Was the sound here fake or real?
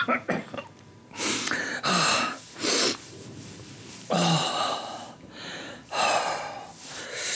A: fake